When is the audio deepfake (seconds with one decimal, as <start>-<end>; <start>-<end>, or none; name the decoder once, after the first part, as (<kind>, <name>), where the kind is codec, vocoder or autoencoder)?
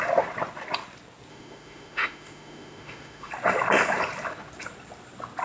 1.3-3.3 (autoencoder, DAC-VAE)